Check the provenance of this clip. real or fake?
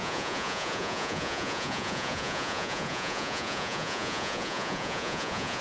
fake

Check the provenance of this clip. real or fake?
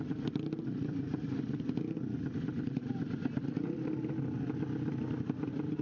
real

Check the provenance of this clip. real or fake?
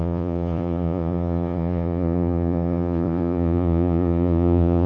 fake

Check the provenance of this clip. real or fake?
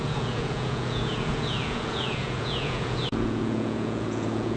fake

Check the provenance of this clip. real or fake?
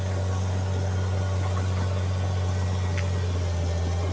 real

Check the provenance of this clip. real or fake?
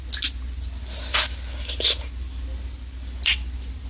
real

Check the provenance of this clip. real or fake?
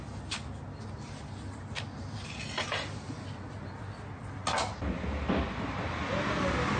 real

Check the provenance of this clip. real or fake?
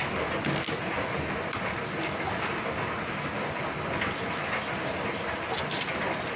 real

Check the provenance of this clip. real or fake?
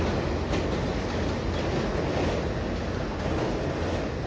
real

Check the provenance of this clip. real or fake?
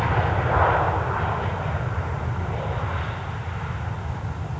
real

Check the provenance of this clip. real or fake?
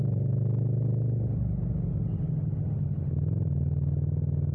real